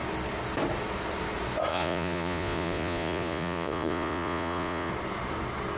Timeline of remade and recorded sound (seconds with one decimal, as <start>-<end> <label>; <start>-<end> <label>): 0.0-1.7 recorded; 1.7-4.9 remade; 4.9-5.8 recorded